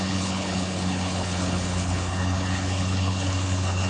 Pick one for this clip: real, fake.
fake